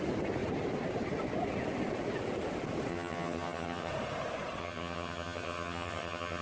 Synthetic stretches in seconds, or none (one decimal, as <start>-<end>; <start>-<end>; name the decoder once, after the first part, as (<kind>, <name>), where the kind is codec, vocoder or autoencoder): 2.9-3.9 (vocoder, HiFi-GAN); 4.6-6.4